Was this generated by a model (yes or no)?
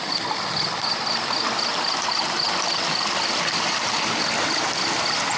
no